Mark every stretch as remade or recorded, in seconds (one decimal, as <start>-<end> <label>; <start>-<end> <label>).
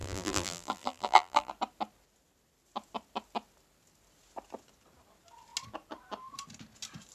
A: 0.0-1.5 remade; 1.5-7.1 recorded